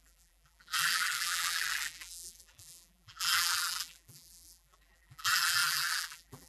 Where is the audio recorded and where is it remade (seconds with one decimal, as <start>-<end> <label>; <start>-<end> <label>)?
0.0-6.5 remade